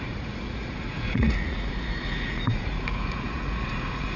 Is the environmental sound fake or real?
fake